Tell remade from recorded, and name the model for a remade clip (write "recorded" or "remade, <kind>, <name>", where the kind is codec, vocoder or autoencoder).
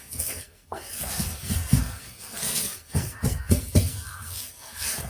remade, codec, SNAC